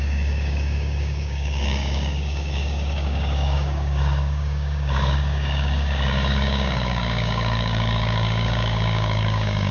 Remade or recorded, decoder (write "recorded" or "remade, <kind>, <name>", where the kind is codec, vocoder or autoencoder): remade, codec, DAC